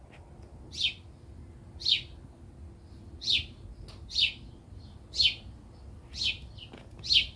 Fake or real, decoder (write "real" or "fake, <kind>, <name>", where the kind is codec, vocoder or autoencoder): real